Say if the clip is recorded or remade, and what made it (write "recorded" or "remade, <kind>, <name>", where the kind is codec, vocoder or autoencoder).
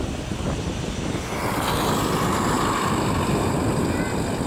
recorded